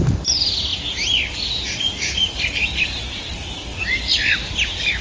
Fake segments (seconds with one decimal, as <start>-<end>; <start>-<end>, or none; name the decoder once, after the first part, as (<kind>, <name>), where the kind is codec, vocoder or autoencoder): none